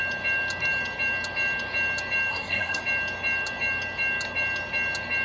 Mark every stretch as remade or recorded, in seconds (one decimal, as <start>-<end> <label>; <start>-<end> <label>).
0.0-2.3 recorded; 2.3-2.8 remade; 2.8-5.2 recorded